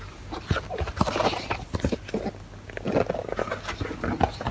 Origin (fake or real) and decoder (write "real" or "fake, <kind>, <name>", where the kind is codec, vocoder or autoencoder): real